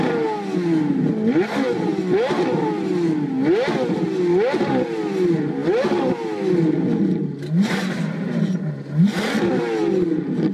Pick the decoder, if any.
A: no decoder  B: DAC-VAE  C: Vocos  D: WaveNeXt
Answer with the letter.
A